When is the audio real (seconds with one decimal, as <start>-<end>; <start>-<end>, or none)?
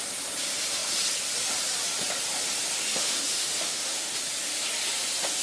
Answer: 0.0-2.9; 4.1-5.4